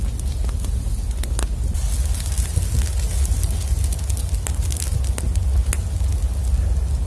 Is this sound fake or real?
real